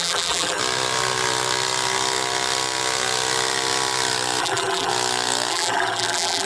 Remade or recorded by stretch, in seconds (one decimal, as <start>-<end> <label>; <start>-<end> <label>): 0.0-0.6 remade; 0.6-4.4 recorded; 4.4-4.9 remade; 4.9-5.5 recorded; 5.5-6.5 remade